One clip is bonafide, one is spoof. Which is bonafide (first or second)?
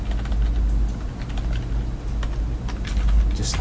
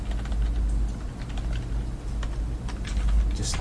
first